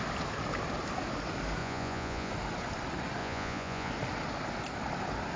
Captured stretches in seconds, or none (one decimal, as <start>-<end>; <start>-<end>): 0.0-1.6; 2.3-3.2; 3.9-5.4